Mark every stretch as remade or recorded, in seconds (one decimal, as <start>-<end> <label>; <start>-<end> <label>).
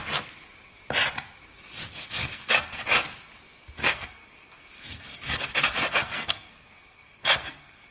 0.0-2.2 recorded; 2.2-2.8 remade; 2.8-3.8 recorded; 3.8-5.5 remade; 5.5-5.9 recorded; 5.9-7.9 remade